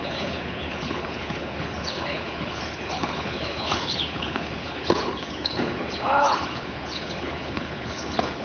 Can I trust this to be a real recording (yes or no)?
no